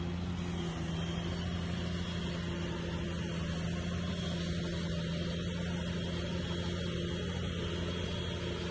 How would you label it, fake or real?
real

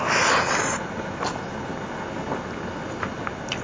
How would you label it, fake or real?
real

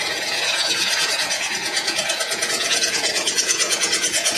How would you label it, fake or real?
fake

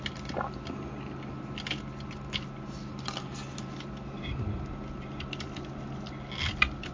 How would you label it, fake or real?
real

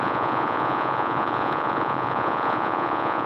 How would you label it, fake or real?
fake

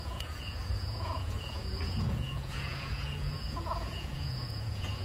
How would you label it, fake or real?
fake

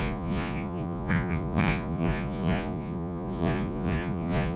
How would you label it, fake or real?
fake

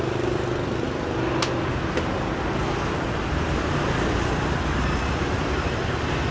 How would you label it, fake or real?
real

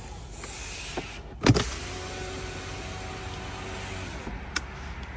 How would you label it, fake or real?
real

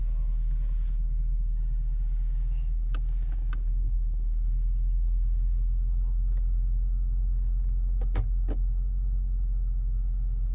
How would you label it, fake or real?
real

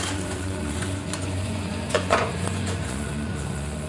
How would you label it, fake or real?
fake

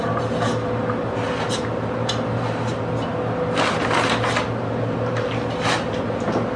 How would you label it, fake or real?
real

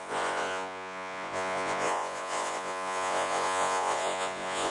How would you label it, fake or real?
fake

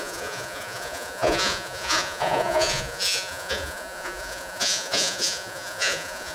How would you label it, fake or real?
fake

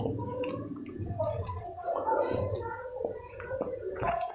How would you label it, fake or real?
fake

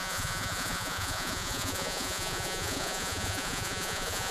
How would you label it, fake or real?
fake